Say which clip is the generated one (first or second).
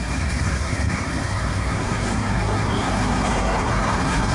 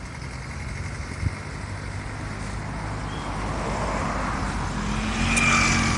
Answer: first